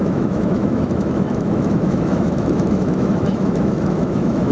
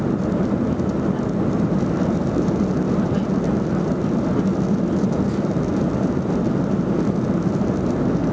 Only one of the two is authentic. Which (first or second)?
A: second